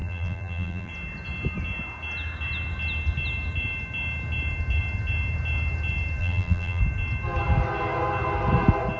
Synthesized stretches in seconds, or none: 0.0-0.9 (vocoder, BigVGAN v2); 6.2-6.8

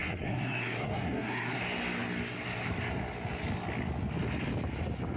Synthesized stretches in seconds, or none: 0.0-1.6 (codec, SNAC)

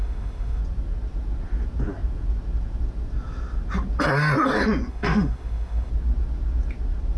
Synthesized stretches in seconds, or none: 0.0-0.6 (autoencoder, DAC-VAE); 4.9-5.9